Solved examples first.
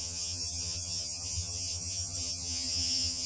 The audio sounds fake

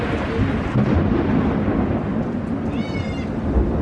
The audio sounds real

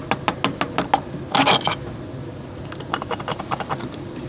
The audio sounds real